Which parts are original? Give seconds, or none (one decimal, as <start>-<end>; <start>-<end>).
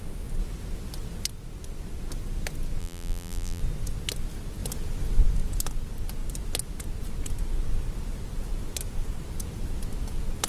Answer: 0.0-2.8; 3.6-10.5